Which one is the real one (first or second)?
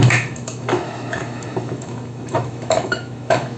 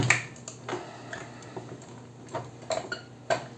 second